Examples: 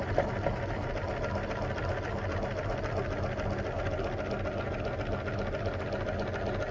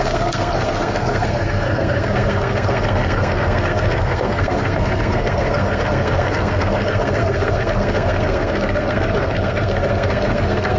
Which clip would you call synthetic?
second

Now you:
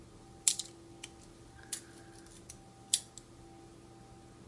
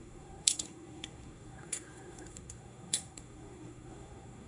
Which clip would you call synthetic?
second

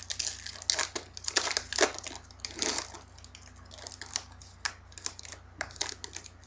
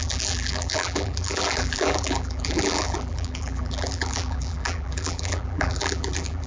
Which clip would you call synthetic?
second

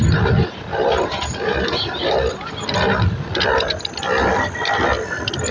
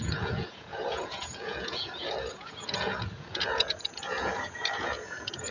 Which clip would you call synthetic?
second